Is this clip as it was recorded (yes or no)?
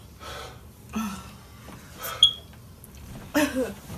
yes